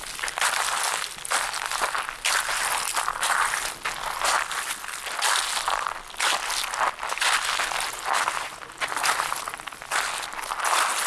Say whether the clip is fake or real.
real